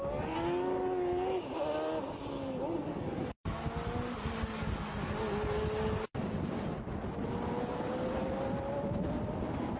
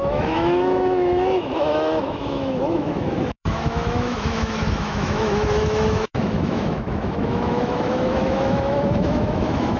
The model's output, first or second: second